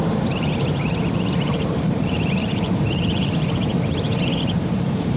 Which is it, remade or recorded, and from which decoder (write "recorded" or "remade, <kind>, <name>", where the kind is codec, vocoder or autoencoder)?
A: remade, vocoder, BigVGAN v2